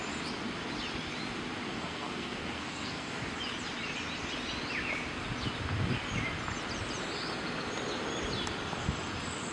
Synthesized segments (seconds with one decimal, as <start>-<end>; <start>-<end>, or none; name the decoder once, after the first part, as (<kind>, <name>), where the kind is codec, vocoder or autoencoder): 1.7-3.3 (codec, SNAC)